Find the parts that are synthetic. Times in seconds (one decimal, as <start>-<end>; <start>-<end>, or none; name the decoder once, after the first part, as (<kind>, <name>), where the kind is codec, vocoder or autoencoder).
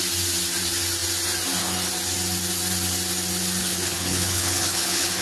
3.6-5.2 (codec, HILCodec)